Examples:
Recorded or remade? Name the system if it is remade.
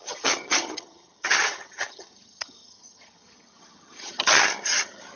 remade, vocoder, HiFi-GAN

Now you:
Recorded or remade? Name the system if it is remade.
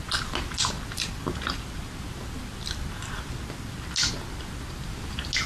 recorded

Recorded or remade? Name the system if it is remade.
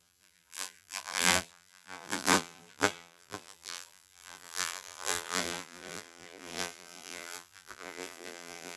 remade, vocoder, BigVGAN v2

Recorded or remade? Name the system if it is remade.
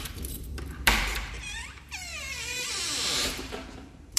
remade, vocoder, BigVGAN v2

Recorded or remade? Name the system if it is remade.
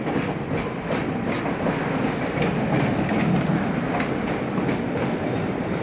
recorded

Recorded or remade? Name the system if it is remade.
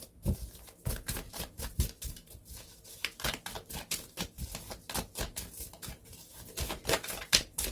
recorded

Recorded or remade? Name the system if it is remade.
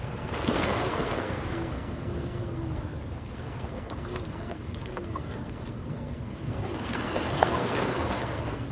remade, codec, SNAC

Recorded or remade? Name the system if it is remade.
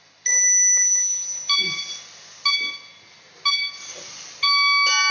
recorded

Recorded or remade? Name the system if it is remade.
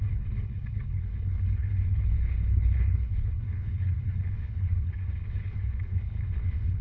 remade, codec, HILCodec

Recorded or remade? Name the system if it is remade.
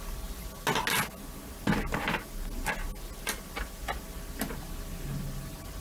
recorded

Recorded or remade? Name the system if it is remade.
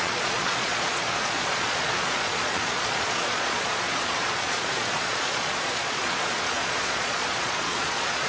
remade, vocoder, Vocos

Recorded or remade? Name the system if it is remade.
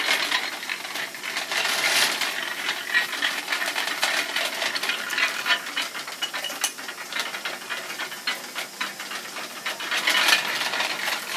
remade, vocoder, BigVGAN v2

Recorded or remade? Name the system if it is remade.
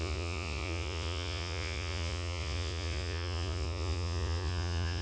remade, vocoder, Vocos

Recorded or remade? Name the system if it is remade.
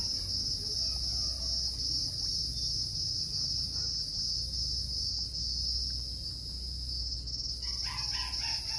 recorded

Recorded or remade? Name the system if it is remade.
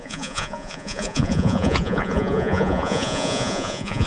remade, vocoder, Vocos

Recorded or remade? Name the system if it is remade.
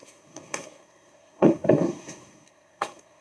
remade, codec, SNAC